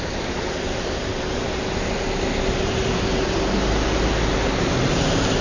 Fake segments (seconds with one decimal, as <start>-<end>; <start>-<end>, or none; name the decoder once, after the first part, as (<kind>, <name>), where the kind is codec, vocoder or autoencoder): 0.0-1.1 (vocoder, BigVGAN v2); 4.3-5.4